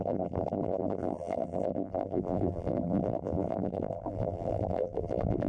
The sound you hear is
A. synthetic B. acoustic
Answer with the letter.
A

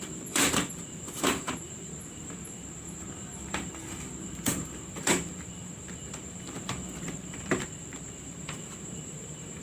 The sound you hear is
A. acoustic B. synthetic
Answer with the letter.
B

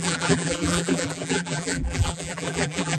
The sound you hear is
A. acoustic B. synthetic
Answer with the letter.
B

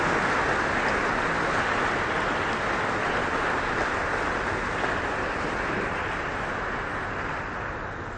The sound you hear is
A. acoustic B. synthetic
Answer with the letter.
A